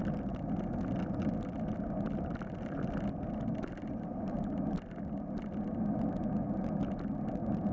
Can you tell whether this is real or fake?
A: real